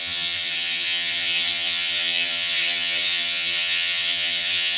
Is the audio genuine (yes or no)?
no